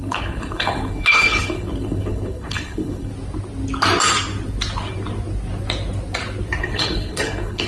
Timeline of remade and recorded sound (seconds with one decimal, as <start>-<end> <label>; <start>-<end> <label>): 0.0-3.1 remade; 3.1-6.6 recorded; 6.6-7.7 remade